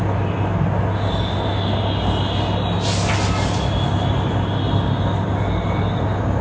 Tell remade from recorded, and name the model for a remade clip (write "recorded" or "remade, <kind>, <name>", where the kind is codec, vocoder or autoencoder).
recorded